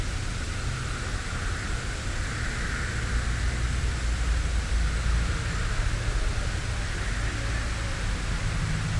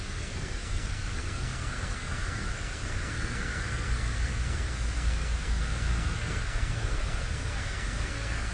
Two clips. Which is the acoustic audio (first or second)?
first